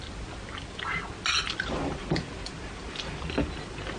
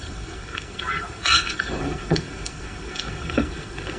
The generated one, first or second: second